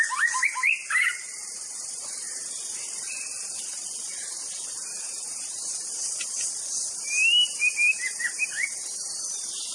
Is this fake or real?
real